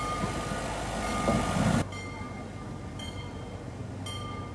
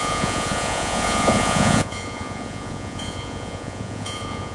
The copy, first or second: second